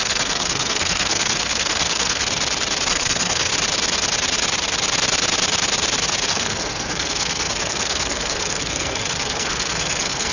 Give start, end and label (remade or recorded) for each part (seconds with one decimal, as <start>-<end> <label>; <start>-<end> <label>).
0.0-2.2 remade; 2.2-2.9 recorded; 2.9-3.5 remade; 3.5-6.3 recorded; 6.3-10.3 remade